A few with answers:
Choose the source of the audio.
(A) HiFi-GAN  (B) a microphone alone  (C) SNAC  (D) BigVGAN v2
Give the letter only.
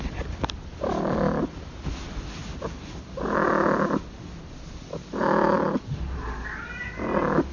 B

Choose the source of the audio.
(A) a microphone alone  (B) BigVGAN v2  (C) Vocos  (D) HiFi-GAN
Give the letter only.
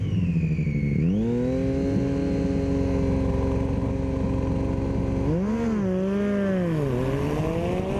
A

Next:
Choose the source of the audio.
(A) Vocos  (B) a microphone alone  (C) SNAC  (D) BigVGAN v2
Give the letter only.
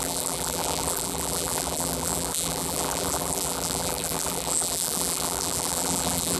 D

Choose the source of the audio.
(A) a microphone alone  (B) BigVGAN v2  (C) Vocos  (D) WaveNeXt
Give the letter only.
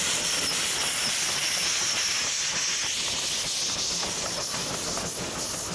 A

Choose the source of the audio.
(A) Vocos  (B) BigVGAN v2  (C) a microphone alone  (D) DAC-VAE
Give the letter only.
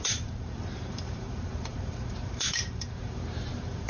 B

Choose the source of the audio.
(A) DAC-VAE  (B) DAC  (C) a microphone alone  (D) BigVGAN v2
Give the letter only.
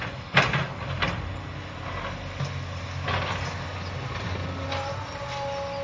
C